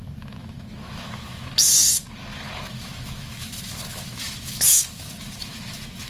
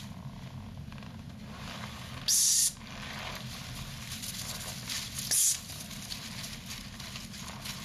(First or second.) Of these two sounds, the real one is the second